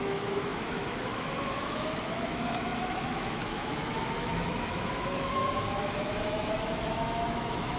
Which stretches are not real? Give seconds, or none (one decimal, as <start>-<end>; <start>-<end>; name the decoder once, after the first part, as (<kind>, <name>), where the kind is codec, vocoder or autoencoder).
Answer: 0.0-7.8 (autoencoder, DAC-VAE)